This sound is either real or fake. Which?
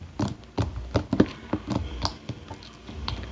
real